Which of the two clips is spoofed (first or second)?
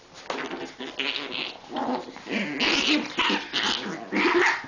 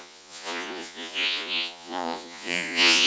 second